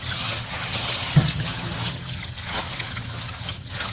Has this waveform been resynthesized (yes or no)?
yes